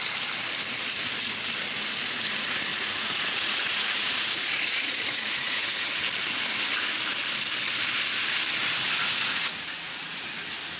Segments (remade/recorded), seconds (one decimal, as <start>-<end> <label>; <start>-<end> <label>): 0.0-2.7 recorded; 2.7-6.0 remade; 6.0-9.0 recorded; 9.0-10.3 remade; 10.3-10.8 recorded